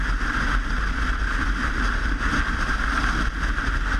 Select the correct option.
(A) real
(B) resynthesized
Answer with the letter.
A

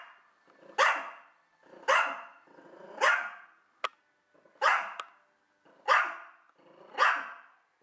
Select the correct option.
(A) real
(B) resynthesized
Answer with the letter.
A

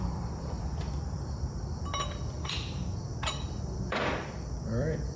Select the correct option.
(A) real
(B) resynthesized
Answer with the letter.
B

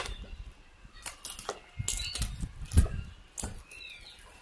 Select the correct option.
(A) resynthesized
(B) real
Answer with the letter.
B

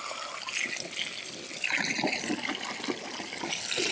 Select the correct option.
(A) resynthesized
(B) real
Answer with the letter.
B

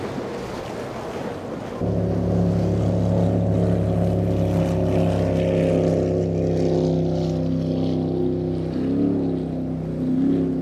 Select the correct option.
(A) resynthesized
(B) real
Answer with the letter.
B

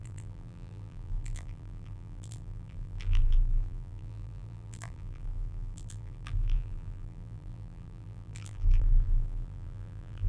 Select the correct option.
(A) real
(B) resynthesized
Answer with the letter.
B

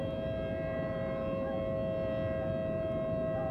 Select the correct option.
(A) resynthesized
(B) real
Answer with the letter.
B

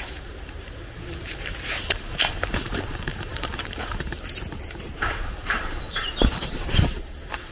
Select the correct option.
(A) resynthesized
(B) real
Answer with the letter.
A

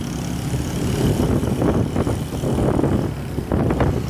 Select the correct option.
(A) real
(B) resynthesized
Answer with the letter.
A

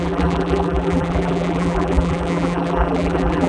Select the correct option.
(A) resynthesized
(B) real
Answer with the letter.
A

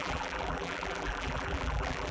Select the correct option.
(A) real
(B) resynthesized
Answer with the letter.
B